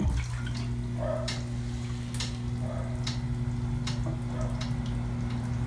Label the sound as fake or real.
real